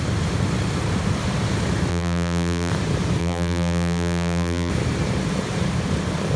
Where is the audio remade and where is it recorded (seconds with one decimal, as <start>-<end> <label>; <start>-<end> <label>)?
0.0-1.9 recorded; 1.9-2.7 remade; 2.7-3.2 recorded; 3.2-4.7 remade; 4.7-6.4 recorded